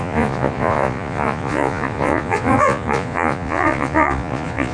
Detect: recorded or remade remade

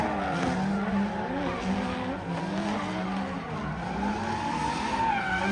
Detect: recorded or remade recorded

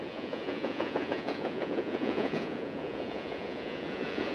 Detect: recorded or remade remade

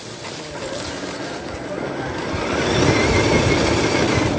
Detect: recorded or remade recorded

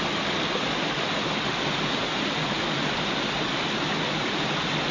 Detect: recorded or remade recorded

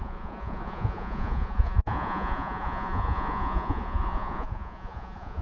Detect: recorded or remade remade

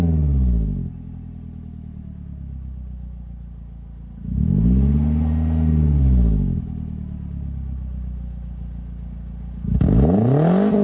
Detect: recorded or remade recorded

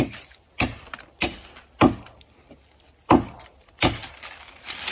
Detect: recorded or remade recorded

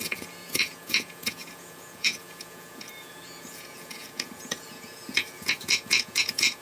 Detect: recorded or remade remade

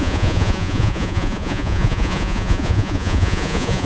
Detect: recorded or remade remade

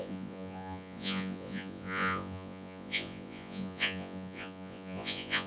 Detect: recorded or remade remade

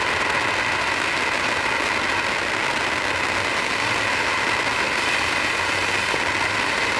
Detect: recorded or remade recorded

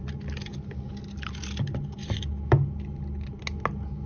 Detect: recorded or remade recorded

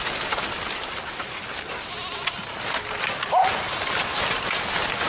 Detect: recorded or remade recorded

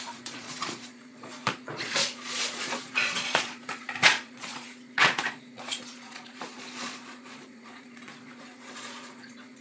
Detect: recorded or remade remade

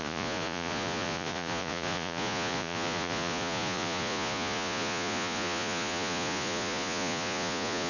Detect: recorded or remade remade